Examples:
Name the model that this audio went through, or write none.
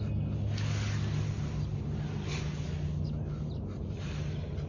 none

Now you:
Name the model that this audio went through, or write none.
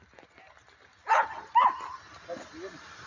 none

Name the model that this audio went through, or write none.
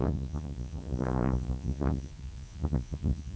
vocoder, Vocos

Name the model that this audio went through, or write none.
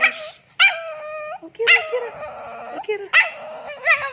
none